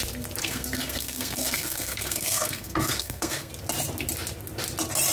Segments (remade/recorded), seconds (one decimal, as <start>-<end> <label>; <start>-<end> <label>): 0.0-0.4 recorded; 0.4-3.5 remade; 3.5-5.1 recorded